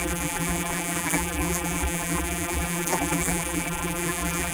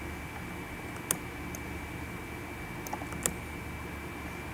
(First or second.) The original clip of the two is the second